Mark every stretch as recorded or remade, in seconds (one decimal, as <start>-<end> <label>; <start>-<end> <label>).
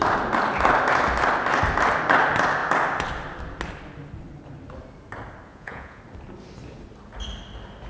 0.0-5.5 recorded; 5.5-6.0 remade; 6.0-7.9 recorded